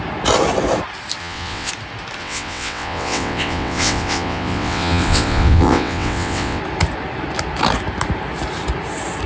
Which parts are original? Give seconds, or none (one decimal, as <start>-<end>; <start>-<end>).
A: 0.0-1.2; 1.7-2.2; 6.6-9.3